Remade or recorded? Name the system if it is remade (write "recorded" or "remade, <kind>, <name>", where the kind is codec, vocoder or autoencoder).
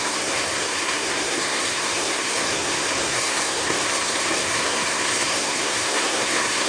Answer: remade, codec, SNAC